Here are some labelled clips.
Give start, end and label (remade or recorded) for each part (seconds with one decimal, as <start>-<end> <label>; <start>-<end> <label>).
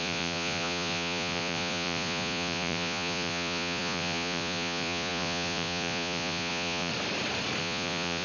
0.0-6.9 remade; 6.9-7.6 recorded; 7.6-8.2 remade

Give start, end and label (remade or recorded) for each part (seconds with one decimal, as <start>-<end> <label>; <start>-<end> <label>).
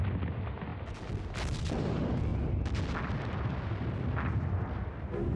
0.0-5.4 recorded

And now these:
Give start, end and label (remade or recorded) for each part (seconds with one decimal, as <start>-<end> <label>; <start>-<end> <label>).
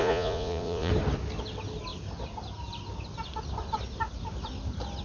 0.0-0.9 remade; 0.9-5.0 recorded